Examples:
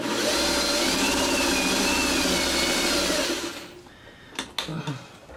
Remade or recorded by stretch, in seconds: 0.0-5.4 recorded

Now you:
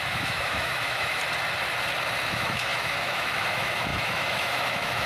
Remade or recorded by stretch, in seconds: 0.0-1.2 remade; 1.2-2.3 recorded; 2.3-5.1 remade

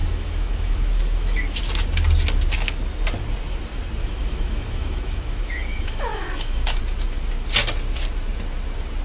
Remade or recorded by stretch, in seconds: 0.0-1.6 remade; 1.6-4.0 recorded; 4.0-6.8 remade; 6.8-9.0 recorded

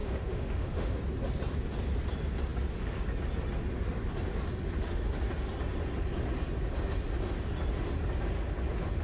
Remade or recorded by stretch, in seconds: 0.0-1.0 remade; 1.0-9.0 recorded

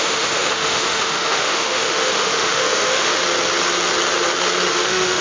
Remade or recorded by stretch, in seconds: 0.0-3.2 remade; 3.2-4.7 recorded; 4.7-5.2 remade

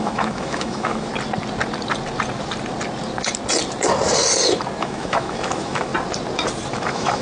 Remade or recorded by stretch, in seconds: 0.0-1.1 remade; 1.1-4.8 recorded; 4.8-5.9 remade; 5.9-6.7 recorded; 6.7-7.2 remade

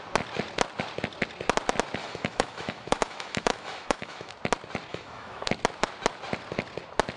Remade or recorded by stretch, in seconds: 0.0-2.0 recorded; 2.0-4.3 remade; 4.3-4.9 recorded; 4.9-5.5 remade; 5.5-7.2 recorded

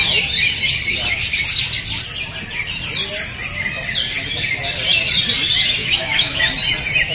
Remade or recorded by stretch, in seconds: 0.0-5.8 recorded; 5.8-6.4 remade; 6.4-7.1 recorded